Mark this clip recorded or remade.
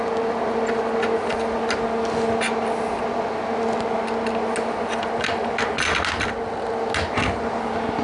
recorded